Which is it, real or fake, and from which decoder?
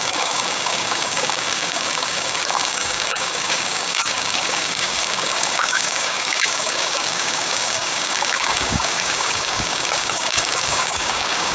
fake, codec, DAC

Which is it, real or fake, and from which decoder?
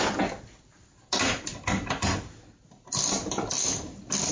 real